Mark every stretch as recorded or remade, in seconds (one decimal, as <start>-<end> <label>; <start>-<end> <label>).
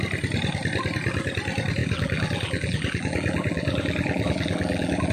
0.0-1.8 recorded; 1.8-5.1 remade